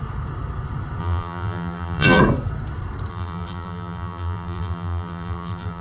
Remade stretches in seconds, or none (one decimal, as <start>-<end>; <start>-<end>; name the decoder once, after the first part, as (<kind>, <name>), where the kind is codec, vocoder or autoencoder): 1.0-2.2 (vocoder, BigVGAN v2); 3.1-5.8